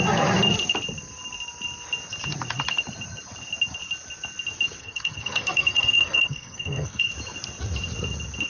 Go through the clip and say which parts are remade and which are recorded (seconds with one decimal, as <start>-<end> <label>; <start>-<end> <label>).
0.0-4.8 recorded; 4.8-7.1 remade; 7.1-8.5 recorded